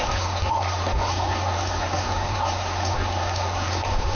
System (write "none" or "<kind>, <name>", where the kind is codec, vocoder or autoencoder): codec, SNAC